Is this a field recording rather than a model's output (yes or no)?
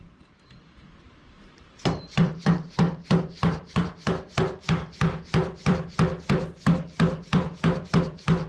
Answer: no